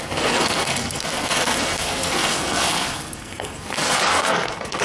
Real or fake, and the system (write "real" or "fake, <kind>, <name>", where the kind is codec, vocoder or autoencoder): fake, codec, SNAC